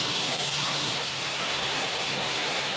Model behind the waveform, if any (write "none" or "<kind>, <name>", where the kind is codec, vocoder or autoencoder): codec, SNAC